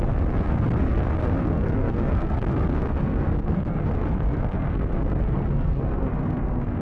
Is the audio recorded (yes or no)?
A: no